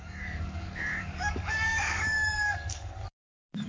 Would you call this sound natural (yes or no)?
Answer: no